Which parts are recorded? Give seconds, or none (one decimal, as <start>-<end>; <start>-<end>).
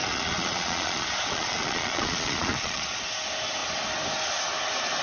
3.0-5.0